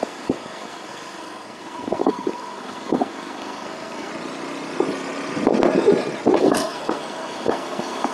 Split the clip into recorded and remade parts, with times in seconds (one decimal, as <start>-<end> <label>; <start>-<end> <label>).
0.0-4.1 remade; 4.1-6.4 recorded; 6.4-8.1 remade